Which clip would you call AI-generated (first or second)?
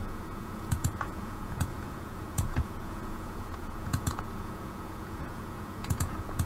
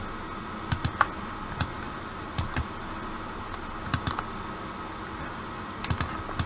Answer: first